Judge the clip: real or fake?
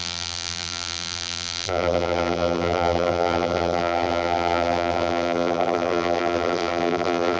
fake